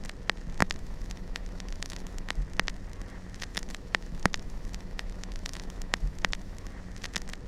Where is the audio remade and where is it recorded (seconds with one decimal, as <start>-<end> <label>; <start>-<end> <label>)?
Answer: 0.0-0.6 recorded; 0.6-2.3 remade; 2.3-3.5 recorded; 3.5-6.7 remade; 6.7-7.5 recorded